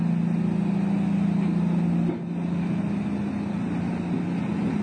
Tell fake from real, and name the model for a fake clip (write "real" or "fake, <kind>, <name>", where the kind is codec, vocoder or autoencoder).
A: real